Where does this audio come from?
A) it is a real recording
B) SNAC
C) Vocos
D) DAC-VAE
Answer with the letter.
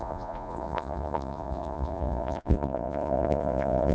C